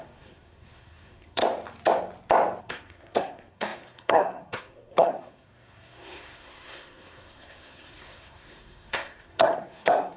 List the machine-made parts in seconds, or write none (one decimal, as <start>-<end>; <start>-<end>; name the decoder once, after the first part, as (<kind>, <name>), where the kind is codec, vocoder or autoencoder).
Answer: 0.0-1.4 (codec, SNAC); 2.6-10.2